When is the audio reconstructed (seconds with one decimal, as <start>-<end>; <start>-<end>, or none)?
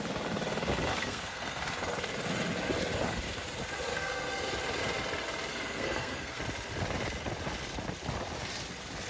0.9-1.6; 3.9-4.4; 5.5-6.4